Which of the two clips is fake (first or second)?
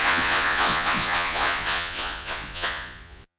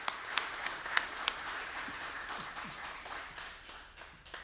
first